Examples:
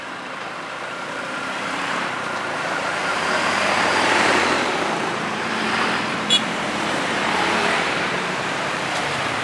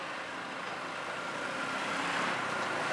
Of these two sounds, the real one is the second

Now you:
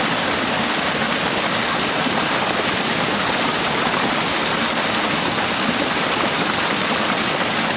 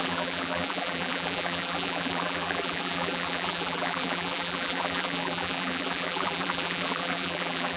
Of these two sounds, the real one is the first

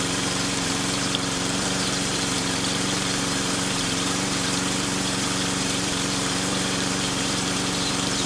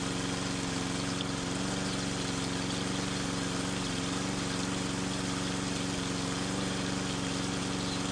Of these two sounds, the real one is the second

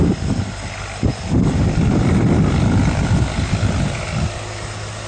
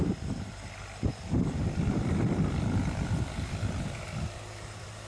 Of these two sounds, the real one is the first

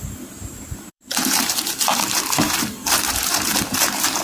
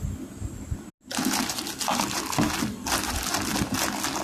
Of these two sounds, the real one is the second